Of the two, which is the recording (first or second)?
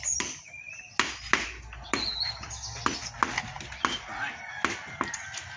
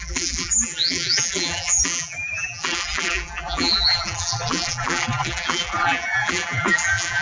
first